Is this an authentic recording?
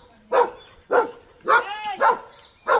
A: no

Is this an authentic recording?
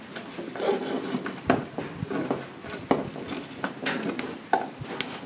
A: yes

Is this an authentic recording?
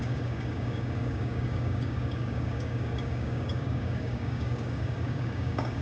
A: no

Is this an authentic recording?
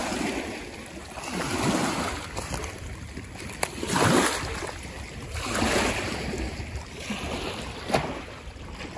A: yes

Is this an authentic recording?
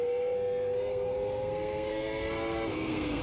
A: no